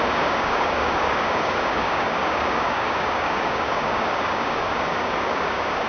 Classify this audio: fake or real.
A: fake